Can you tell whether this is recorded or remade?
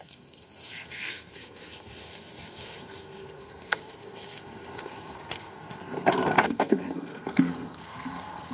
remade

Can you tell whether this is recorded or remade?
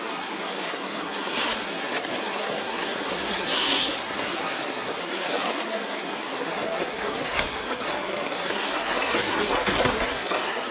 remade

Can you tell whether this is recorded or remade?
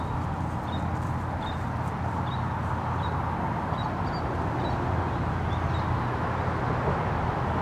recorded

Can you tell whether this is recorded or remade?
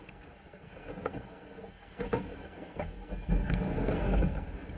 remade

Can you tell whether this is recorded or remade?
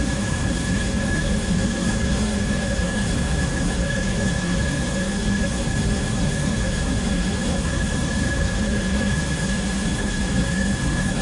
remade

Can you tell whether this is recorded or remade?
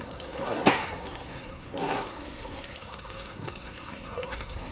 remade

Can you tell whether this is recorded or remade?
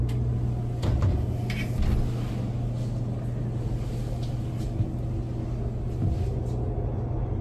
recorded